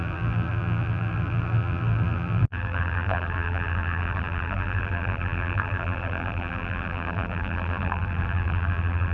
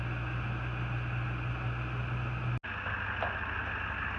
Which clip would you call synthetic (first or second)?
first